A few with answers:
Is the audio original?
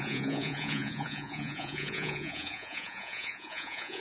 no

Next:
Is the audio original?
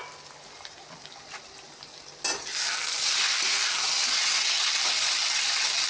yes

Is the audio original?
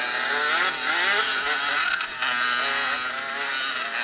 yes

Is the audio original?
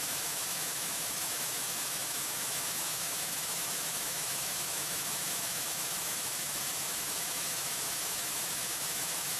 no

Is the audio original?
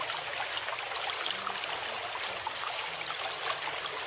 yes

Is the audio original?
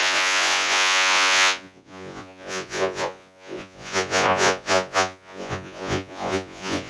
no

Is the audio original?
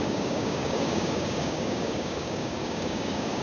no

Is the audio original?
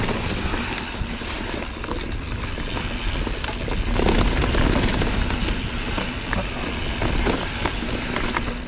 yes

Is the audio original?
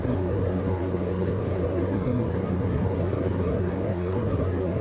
no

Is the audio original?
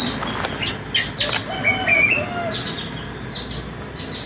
yes